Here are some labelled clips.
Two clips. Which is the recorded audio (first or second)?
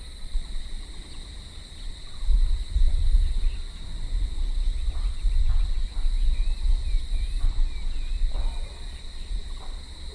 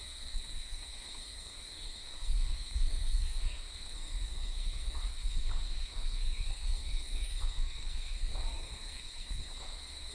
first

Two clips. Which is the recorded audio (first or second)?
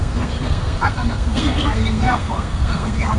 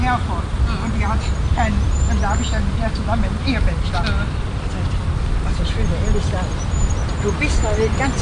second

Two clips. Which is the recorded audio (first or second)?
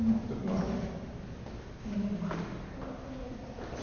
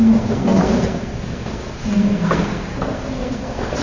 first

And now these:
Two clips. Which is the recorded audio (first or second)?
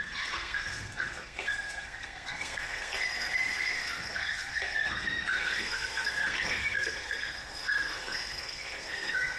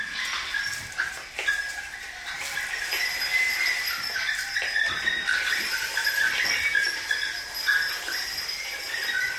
second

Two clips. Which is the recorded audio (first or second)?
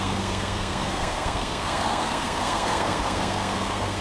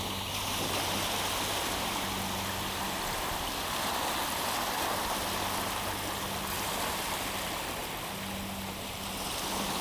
second